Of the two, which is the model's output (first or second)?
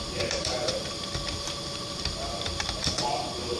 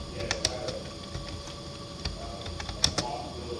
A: first